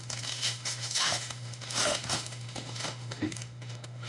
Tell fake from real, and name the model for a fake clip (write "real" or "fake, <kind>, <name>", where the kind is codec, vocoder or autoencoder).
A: fake, autoencoder, DAC-VAE